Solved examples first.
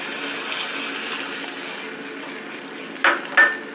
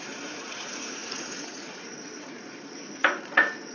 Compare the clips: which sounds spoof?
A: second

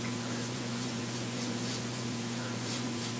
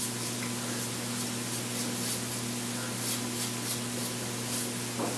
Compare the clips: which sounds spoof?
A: first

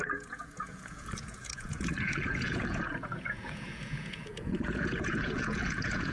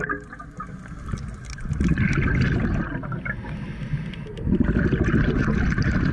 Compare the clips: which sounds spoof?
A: first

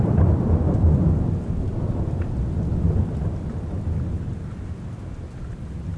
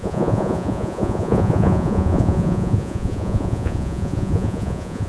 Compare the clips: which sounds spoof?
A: second